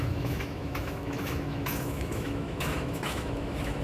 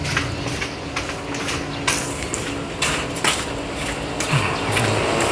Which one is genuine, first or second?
second